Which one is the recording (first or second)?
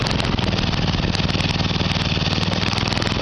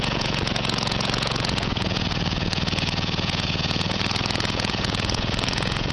first